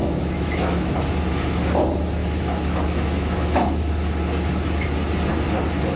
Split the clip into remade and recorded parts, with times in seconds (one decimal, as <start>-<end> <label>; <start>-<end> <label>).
0.0-0.9 remade; 0.9-2.2 recorded; 2.2-3.9 remade; 3.9-6.0 recorded